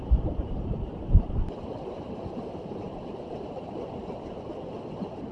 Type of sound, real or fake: real